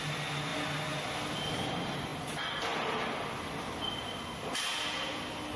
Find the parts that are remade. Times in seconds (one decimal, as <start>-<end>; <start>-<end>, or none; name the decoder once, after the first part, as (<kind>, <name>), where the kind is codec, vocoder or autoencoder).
none